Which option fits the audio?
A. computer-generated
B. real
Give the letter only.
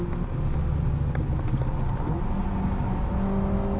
B